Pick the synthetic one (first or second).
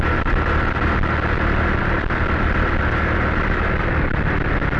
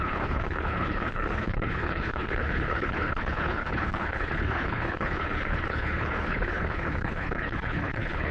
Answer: second